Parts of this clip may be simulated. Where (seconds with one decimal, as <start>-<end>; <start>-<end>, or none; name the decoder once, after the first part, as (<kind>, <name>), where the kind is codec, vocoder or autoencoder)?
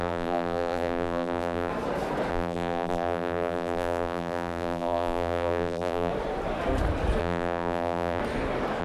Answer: 0.0-1.7 (vocoder, BigVGAN v2); 2.3-6.1; 7.2-8.2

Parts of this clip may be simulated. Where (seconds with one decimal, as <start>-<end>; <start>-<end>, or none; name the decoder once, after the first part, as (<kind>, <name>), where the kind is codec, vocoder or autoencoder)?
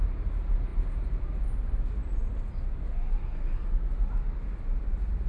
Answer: none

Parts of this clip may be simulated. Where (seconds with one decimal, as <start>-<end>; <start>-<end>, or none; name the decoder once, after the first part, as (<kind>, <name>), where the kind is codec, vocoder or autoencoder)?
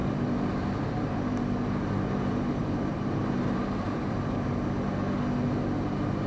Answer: 0.0-1.4 (vocoder, BigVGAN v2); 2.6-4.5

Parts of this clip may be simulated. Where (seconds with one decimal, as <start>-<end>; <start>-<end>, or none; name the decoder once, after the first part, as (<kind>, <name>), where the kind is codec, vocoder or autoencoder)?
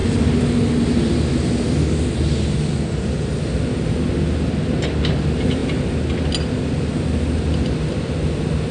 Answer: none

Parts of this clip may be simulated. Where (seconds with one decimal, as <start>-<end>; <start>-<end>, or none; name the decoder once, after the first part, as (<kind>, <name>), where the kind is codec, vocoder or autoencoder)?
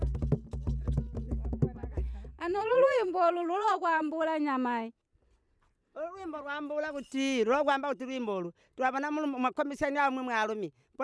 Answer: 2.3-4.1 (vocoder, Vocos)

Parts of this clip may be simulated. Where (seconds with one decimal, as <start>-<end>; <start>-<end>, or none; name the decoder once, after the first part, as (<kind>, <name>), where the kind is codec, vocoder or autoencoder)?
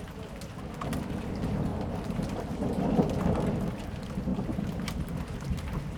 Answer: 1.7-2.3 (vocoder, BigVGAN v2); 4.3-6.0